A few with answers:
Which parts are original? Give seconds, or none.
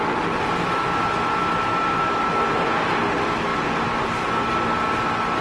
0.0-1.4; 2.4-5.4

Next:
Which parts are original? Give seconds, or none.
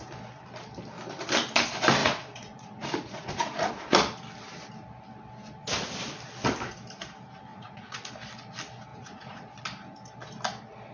0.0-2.0; 3.7-7.5; 8.1-8.9; 9.6-10.9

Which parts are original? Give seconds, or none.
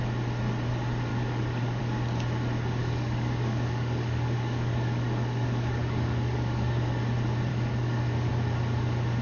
0.0-1.1; 1.8-2.8; 7.0-7.5; 8.3-9.2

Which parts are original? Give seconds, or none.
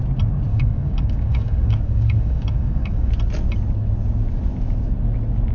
0.0-0.5; 3.1-5.5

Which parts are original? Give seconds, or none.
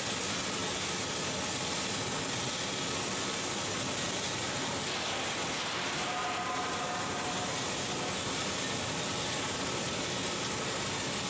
0.0-11.3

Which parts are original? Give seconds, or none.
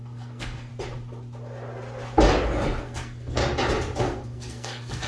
0.7-2.8; 3.4-4.0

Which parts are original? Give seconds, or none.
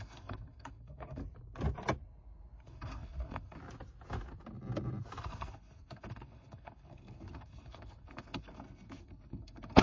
1.2-2.6; 3.6-5.2